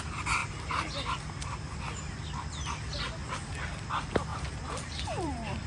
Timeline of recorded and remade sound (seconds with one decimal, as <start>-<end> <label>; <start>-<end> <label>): 0.0-0.4 recorded; 0.4-1.1 remade; 1.1-4.3 recorded; 4.3-5.7 remade